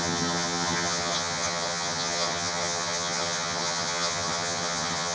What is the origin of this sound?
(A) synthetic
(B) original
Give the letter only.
A